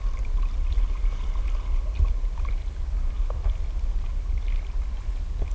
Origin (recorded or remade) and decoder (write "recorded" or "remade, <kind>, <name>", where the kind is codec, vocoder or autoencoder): recorded